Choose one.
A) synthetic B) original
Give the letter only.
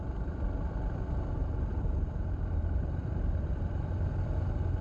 A